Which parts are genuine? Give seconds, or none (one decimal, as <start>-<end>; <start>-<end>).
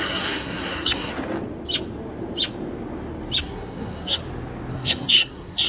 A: 1.1-3.4; 4.2-4.7